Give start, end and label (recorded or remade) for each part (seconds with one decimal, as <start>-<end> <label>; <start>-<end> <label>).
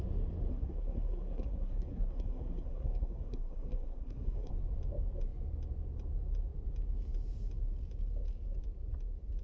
0.0-0.5 recorded; 0.5-4.5 remade; 4.5-9.4 recorded